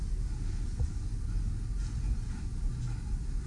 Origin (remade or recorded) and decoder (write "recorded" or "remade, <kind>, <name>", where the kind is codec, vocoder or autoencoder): recorded